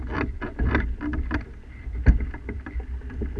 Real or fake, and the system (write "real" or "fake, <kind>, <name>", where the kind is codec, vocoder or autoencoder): real